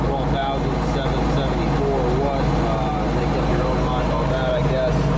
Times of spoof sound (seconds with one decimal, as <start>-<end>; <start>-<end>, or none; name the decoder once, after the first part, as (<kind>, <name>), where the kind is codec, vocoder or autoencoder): none